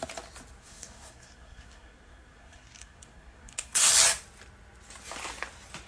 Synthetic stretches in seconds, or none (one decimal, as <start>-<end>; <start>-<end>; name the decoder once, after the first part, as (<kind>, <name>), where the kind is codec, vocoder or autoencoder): 0.6-3.9 (codec, SNAC)